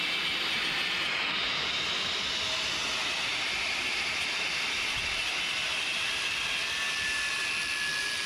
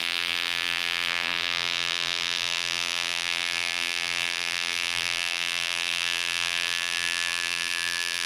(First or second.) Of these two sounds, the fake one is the second